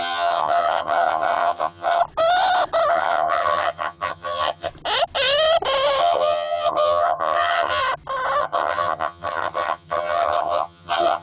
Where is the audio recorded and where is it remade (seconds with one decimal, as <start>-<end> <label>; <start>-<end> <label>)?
0.0-2.0 remade; 2.0-2.9 recorded; 2.9-4.7 remade; 4.7-6.0 recorded; 6.0-7.8 remade; 7.8-8.4 recorded; 8.4-11.2 remade